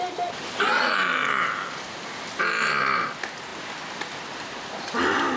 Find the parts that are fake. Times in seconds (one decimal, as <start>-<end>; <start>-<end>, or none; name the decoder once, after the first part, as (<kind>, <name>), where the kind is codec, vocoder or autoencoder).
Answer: none